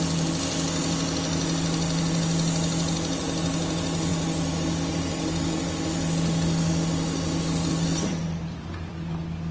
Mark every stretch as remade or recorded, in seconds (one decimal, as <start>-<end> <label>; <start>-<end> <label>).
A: 0.0-9.5 recorded